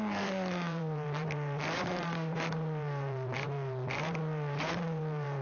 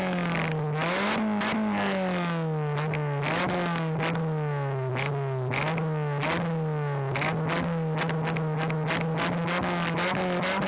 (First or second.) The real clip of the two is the second